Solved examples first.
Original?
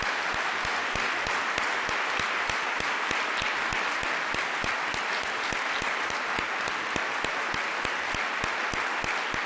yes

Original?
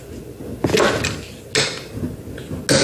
yes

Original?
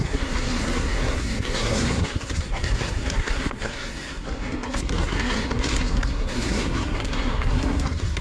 no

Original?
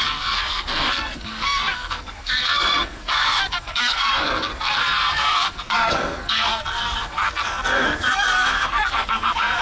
no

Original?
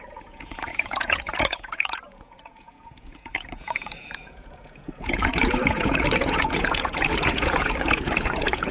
no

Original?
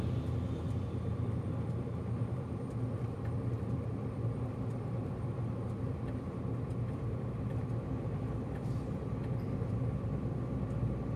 no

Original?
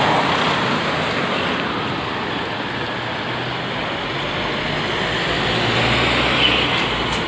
yes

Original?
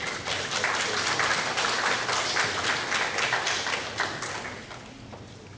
yes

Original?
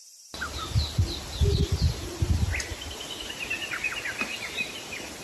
yes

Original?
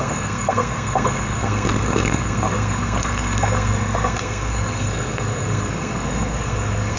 no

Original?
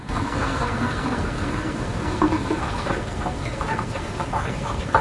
no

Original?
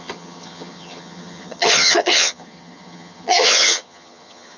no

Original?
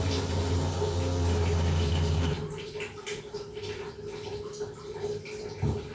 yes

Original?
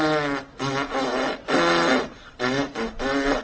yes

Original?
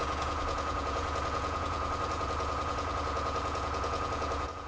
no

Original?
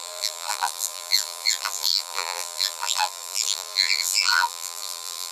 no